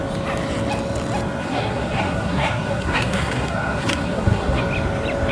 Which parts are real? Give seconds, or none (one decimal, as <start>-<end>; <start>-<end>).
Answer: 0.0-1.4; 4.6-5.3